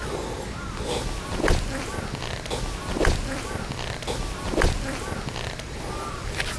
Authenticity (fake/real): real